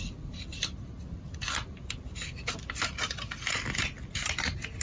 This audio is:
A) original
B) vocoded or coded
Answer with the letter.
A